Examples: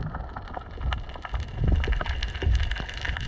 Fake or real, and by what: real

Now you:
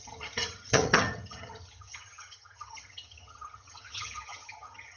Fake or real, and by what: fake, vocoder, HiFi-GAN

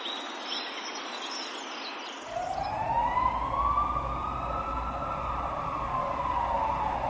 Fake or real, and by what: real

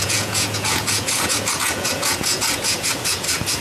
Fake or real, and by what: fake, vocoder, Vocos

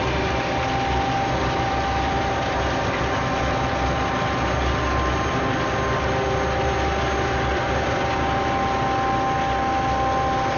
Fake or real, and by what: real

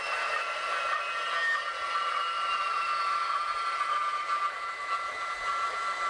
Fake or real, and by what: real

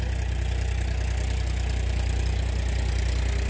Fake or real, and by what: real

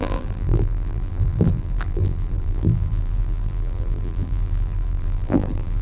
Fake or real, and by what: fake, vocoder, BigVGAN v2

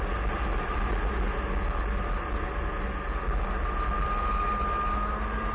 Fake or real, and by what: real